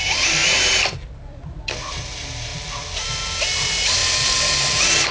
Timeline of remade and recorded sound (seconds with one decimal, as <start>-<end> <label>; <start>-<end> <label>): 0.0-2.5 remade; 2.5-3.4 recorded; 3.4-5.1 remade